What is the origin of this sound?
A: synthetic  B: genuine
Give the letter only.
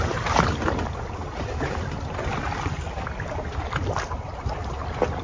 B